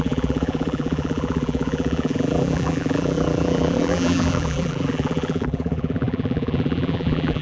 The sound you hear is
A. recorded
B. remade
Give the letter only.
B